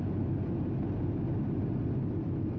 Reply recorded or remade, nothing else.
recorded